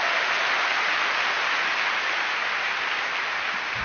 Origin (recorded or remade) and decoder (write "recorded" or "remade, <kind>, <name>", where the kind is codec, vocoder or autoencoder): recorded